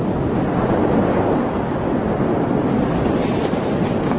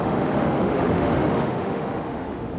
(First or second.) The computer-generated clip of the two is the second